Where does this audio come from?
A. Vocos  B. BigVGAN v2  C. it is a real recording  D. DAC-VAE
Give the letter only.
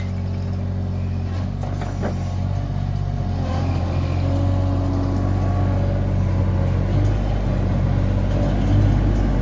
C